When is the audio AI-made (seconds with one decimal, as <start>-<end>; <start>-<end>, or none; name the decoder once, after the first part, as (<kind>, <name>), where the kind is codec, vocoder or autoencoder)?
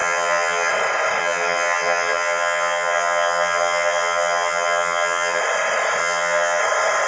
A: 0.0-0.7 (vocoder, HiFi-GAN); 1.2-5.4; 6.0-6.6